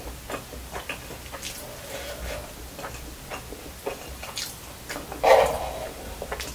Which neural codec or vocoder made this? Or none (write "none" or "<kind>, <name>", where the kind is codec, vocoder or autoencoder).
none